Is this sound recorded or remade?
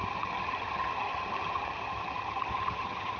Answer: remade